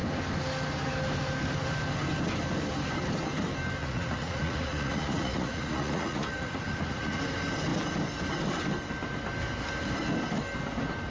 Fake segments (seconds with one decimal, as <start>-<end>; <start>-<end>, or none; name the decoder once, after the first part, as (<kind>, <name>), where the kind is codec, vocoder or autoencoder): 3.8-7.2 (vocoder, Vocos)